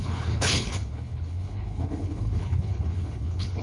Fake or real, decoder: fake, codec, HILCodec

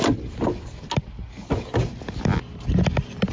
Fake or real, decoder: real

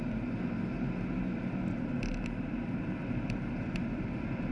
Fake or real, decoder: real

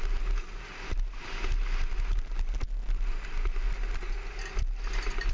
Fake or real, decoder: real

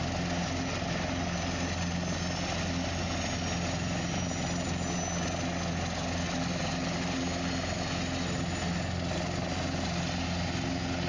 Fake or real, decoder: real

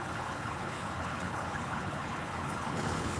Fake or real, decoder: fake, codec, HILCodec